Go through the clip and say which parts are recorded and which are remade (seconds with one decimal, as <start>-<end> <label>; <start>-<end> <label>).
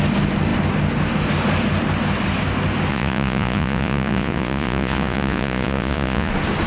0.0-2.9 recorded; 2.9-6.3 remade; 6.3-6.7 recorded